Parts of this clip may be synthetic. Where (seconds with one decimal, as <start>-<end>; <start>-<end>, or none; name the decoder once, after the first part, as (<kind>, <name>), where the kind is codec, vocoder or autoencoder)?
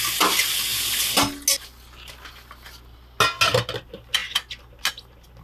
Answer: none